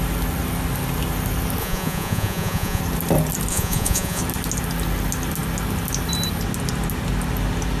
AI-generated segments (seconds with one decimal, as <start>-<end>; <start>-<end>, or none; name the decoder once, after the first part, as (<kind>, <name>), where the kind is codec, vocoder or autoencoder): 1.6-2.8 (vocoder, Vocos); 3.5-4.2